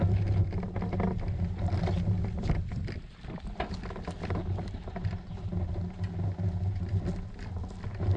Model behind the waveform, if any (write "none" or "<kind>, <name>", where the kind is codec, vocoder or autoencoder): none